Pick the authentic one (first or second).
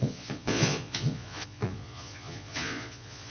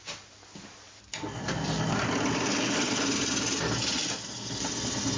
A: second